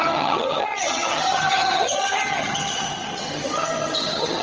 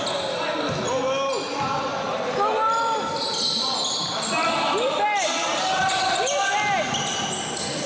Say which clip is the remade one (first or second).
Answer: first